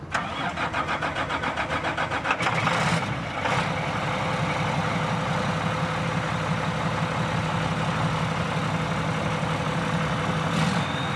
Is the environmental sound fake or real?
real